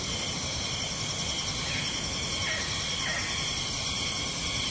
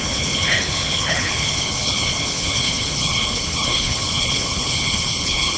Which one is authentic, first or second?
first